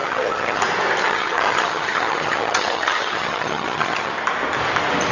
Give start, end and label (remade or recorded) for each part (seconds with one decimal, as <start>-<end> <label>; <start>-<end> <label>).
0.0-0.6 remade; 0.6-1.0 recorded; 1.0-4.1 remade; 4.1-5.1 recorded